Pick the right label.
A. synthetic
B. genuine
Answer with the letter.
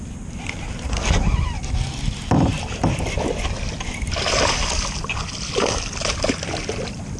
B